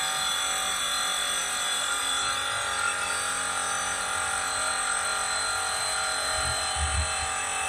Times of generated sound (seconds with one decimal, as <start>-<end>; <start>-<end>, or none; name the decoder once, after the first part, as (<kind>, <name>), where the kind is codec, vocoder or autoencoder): none